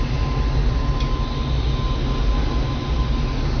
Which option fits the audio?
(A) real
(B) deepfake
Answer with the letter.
A